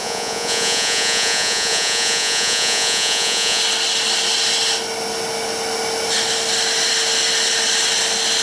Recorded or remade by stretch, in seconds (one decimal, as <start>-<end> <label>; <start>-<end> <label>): 0.0-3.6 remade; 3.6-8.4 recorded